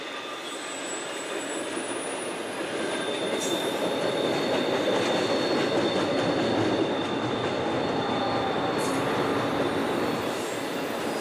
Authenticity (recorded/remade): recorded